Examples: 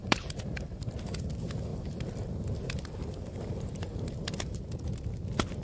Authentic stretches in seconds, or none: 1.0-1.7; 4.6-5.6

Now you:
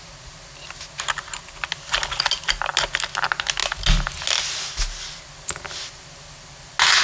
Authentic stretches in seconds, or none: 0.0-7.0

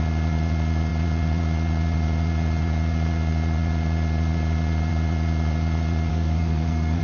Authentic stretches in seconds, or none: 0.0-6.1

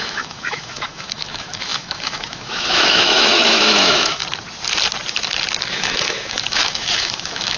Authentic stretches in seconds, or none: 4.2-5.7

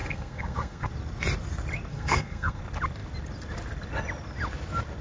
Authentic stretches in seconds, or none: 0.9-1.9; 2.6-5.0